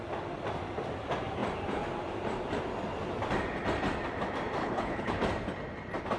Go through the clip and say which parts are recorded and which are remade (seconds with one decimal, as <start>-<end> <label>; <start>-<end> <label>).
0.0-4.6 recorded; 4.6-5.1 remade; 5.1-6.2 recorded